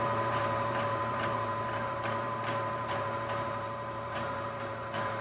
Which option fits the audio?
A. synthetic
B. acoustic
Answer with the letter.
A